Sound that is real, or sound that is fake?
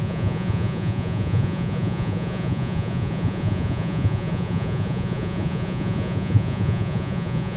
fake